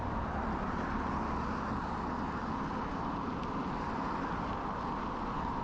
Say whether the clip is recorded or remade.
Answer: recorded